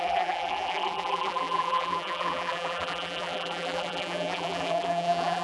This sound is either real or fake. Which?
fake